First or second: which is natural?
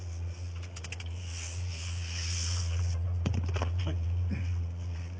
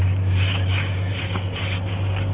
second